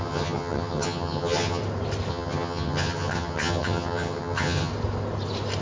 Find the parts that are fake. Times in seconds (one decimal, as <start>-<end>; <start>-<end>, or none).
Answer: 0.0-1.6; 2.1-4.7